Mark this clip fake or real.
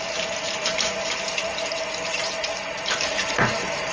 fake